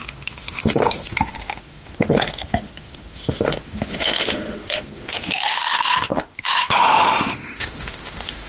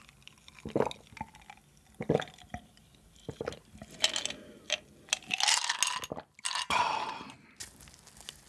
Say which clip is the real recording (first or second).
second